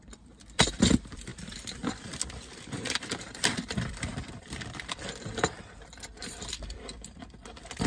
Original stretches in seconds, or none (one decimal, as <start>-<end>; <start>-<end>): none